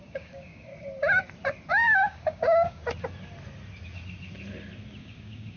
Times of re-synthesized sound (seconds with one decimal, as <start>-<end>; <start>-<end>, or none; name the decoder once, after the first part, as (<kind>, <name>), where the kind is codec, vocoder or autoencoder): 0.0-0.7 (codec, DAC); 1.7-2.8; 5.0-5.6